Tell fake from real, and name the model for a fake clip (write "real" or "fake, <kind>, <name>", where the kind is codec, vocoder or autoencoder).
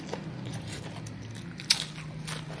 real